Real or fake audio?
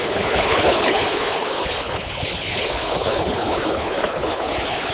fake